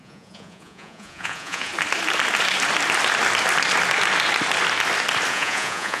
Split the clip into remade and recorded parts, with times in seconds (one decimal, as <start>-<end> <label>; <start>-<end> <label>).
0.0-1.7 remade; 1.7-5.3 recorded; 5.3-6.0 remade